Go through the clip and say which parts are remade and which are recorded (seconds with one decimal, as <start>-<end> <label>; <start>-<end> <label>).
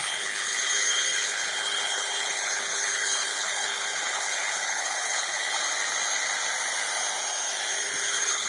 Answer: 0.0-5.6 remade; 5.6-8.1 recorded; 8.1-8.5 remade